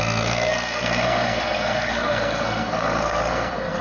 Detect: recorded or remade remade